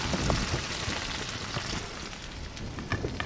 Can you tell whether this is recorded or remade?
recorded